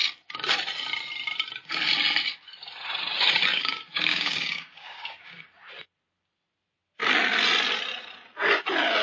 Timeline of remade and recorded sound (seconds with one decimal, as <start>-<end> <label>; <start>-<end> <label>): 0.0-3.5 recorded; 3.5-5.4 remade; 5.4-9.0 recorded